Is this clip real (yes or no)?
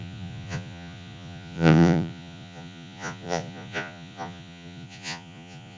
no